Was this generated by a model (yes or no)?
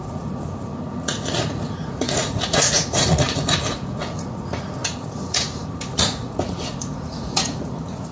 yes